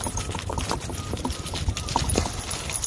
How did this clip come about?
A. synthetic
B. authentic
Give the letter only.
B